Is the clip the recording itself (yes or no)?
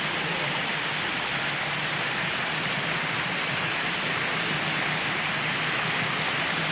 yes